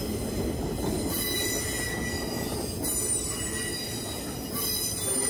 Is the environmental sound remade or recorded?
recorded